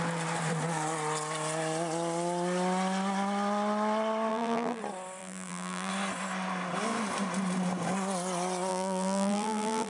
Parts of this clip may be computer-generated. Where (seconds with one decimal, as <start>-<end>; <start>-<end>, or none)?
4.3-4.8; 5.2-5.9; 8.7-9.9

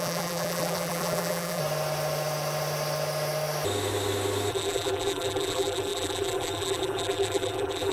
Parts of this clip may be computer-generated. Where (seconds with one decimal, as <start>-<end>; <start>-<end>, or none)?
0.0-1.6; 4.5-7.9

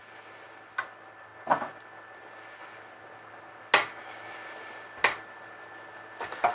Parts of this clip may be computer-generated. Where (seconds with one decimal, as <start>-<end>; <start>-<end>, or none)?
none

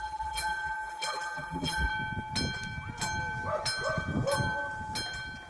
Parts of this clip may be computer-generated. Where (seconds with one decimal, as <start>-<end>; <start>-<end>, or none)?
0.0-1.9

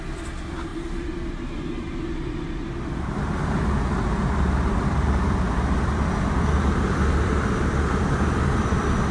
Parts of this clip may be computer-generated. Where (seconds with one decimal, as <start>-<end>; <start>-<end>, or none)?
0.0-9.1

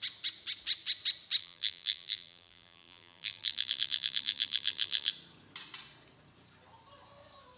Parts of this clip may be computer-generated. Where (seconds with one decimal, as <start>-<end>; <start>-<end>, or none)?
1.4-5.1

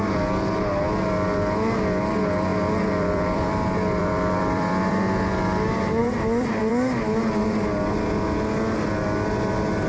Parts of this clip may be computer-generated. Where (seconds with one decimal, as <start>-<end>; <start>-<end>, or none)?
2.5-5.0; 6.0-6.7

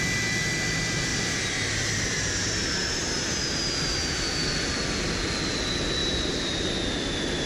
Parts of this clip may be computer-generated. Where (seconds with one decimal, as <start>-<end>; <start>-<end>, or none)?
1.1-3.7; 6.0-6.7